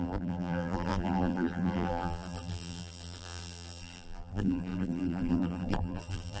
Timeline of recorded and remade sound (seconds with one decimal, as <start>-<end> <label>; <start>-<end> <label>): 0.0-6.4 remade